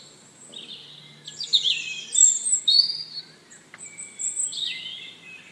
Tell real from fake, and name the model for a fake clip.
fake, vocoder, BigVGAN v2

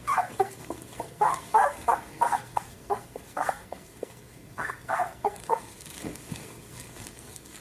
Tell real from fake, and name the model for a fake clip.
fake, codec, SNAC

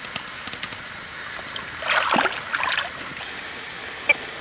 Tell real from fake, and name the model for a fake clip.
real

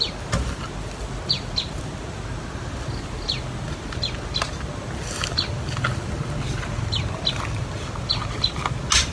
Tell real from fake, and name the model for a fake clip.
real